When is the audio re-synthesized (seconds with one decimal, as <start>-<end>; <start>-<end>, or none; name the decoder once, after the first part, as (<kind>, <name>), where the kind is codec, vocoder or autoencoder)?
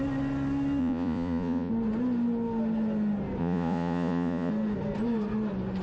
0.8-1.7 (vocoder, Vocos); 3.4-4.5